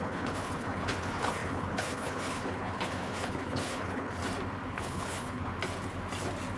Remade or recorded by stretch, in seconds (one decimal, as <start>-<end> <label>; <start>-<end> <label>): 0.0-4.2 remade; 4.2-4.7 recorded; 4.7-5.5 remade; 5.5-6.6 recorded